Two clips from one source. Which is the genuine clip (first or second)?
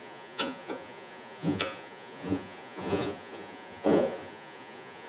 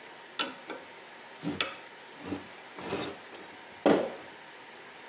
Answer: second